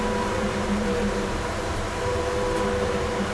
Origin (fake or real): fake